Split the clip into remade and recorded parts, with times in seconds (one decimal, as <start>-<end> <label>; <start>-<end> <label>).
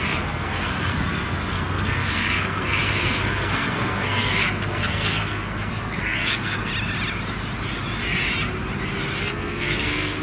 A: 0.0-6.7 remade; 6.7-9.2 recorded; 9.2-10.2 remade